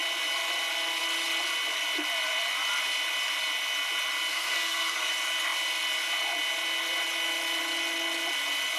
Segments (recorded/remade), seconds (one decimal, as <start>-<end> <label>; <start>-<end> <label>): 0.0-4.3 recorded; 4.3-5.1 remade; 5.1-8.8 recorded